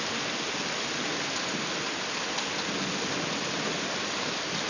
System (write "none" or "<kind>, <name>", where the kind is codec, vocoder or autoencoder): none